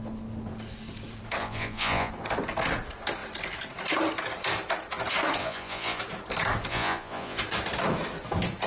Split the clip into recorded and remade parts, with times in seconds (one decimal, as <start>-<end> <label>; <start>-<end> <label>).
0.0-1.4 recorded; 1.4-2.1 remade; 2.1-5.4 recorded; 5.4-6.0 remade; 6.0-6.7 recorded; 6.7-7.4 remade; 7.4-8.7 recorded